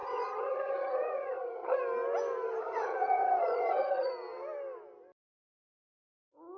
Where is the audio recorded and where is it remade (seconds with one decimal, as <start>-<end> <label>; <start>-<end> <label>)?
0.0-1.8 remade; 1.8-2.6 recorded; 2.6-4.1 remade; 4.1-6.6 recorded